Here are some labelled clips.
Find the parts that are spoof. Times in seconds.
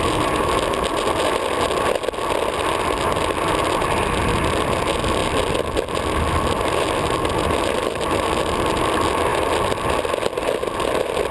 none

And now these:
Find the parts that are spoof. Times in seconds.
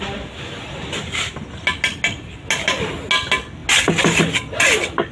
none